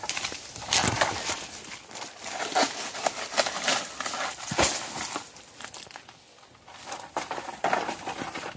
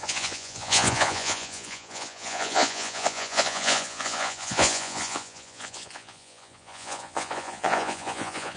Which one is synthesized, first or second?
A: second